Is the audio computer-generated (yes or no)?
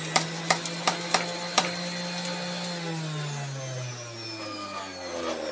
no